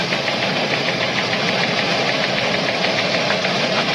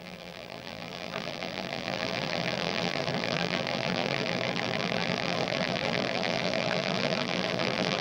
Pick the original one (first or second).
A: first